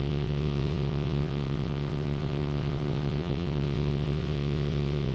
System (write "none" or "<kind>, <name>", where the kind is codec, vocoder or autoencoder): vocoder, WaveNeXt